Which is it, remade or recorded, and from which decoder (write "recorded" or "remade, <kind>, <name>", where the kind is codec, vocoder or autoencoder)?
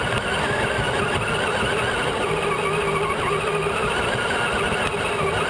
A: recorded